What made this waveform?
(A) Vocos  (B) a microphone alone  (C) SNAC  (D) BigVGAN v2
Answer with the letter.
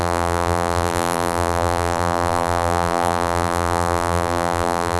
D